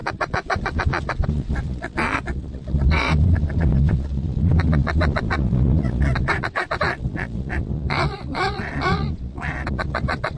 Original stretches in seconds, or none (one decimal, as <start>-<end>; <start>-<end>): none